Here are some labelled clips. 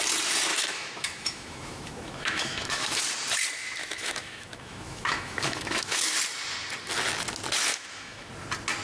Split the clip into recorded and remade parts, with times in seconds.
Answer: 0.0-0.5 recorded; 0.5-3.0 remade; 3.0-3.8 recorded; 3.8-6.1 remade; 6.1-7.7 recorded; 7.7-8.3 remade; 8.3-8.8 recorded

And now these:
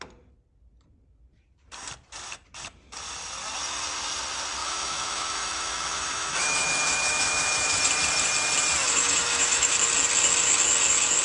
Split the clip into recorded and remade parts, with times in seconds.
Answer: 0.0-4.6 recorded; 4.6-7.8 remade; 7.8-8.8 recorded; 8.8-9.7 remade; 9.7-11.2 recorded